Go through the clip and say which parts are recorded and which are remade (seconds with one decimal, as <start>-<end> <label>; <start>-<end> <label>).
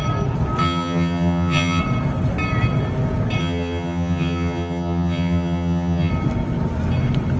0.0-0.6 recorded; 0.6-1.8 remade; 1.8-3.4 recorded; 3.4-6.1 remade; 6.1-7.4 recorded